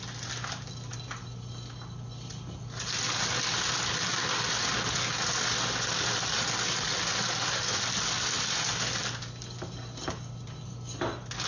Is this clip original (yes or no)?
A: yes